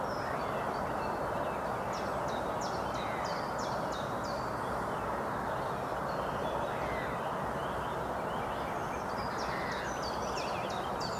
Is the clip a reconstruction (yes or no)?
no